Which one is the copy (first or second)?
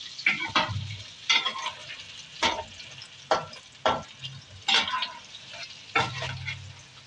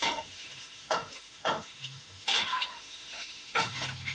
second